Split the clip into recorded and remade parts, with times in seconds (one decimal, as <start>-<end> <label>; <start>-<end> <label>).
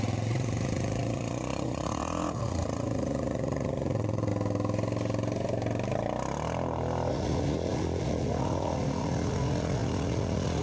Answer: 0.0-4.3 remade; 4.3-7.1 recorded; 7.1-10.6 remade